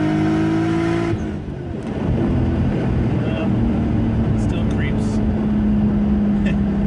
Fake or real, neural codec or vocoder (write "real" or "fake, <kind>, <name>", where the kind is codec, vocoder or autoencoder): real